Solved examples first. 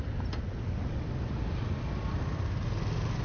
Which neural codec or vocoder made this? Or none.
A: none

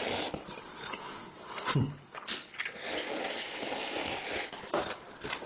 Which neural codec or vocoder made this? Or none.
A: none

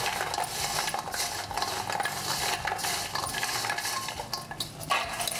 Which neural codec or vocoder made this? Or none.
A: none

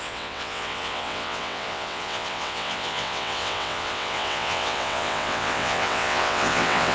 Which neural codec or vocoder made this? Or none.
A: vocoder, WaveNeXt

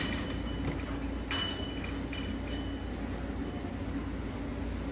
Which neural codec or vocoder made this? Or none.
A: none